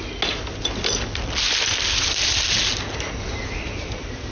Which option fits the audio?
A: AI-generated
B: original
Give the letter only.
B